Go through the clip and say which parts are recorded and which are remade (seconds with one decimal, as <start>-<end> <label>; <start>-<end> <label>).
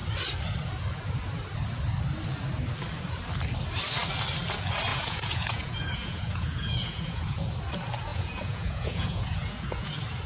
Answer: 0.0-4.9 recorded; 4.9-7.5 remade; 7.5-8.1 recorded; 8.1-9.9 remade; 9.9-10.3 recorded